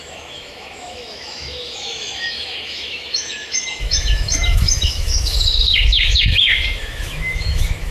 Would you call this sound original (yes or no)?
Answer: no